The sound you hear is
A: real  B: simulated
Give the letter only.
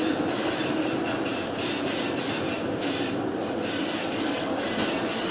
A